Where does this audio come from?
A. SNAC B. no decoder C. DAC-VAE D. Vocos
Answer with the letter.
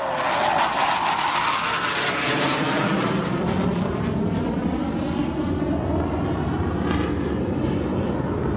B